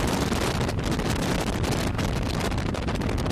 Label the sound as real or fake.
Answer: fake